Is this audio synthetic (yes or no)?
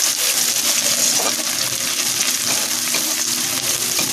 no